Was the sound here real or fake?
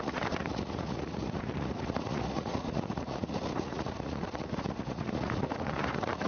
fake